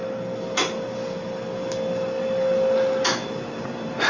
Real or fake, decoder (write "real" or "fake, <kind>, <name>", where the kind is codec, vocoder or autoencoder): real